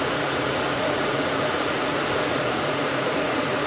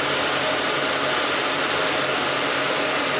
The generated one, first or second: first